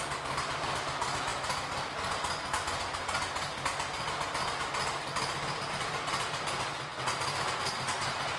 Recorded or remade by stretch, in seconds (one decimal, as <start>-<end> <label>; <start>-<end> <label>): 0.0-8.4 recorded

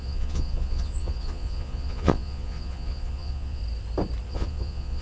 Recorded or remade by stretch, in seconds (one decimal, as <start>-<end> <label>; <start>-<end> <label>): 0.0-3.6 remade; 3.6-4.3 recorded; 4.3-5.0 remade

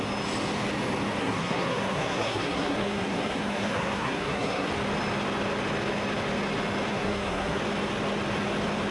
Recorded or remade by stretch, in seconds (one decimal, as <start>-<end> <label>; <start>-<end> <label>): 0.0-1.2 recorded; 1.2-4.7 remade; 4.7-6.9 recorded; 6.9-7.6 remade; 7.6-8.9 recorded

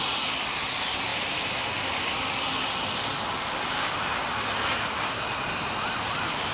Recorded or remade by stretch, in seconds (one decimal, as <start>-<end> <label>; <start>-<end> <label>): 0.0-6.5 recorded

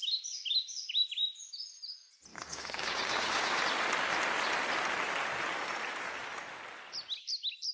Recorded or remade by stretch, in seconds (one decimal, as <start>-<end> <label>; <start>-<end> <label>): 0.0-2.3 recorded; 2.3-3.6 remade; 3.6-7.7 recorded